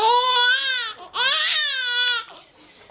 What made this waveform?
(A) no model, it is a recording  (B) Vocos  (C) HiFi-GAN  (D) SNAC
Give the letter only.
A